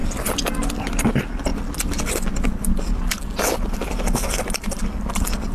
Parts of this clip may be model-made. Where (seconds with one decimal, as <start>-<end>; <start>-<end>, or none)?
none